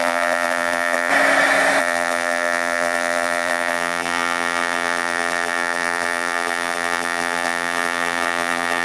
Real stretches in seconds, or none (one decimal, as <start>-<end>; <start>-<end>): 1.1-1.8